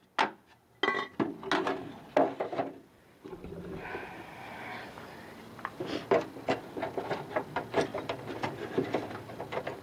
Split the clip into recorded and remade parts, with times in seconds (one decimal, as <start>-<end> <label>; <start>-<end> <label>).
0.0-2.6 recorded; 2.6-6.3 remade; 6.3-7.9 recorded; 7.9-9.4 remade; 9.4-9.8 recorded